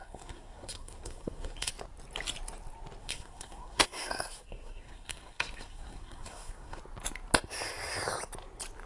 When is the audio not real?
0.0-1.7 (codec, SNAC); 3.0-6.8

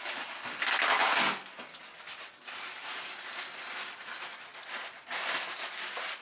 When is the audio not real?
none

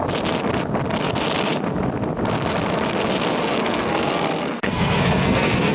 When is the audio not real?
3.4-5.7 (codec, SNAC)

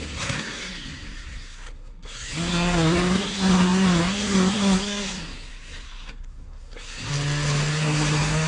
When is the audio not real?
0.0-7.1 (codec, SNAC); 7.7-8.5

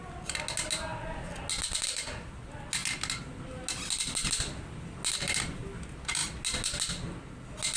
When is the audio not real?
none